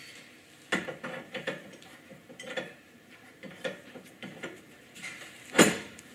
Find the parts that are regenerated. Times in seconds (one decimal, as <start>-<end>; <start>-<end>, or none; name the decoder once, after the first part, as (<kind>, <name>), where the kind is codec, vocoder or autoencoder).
1.2-6.1 (vocoder, BigVGAN v2)